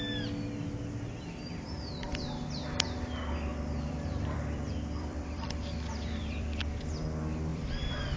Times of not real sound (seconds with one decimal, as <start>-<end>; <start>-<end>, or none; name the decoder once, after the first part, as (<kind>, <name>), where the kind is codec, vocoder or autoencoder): 2.1-2.7 (vocoder, BigVGAN v2); 3.5-6.6; 7.5-8.2